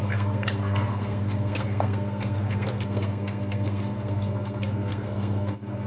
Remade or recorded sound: remade